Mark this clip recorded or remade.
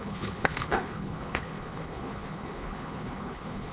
remade